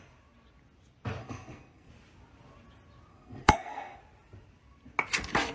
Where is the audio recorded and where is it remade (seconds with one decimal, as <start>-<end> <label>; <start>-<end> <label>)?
0.0-1.2 recorded; 1.2-1.9 remade; 1.9-3.1 recorded; 3.1-4.0 remade; 4.0-5.5 recorded